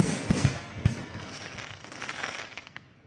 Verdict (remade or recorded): remade